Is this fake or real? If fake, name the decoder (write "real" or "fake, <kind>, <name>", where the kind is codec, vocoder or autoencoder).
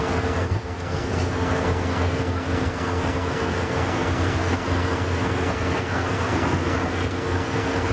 fake, codec, SNAC